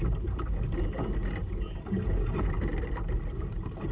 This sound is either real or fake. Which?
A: real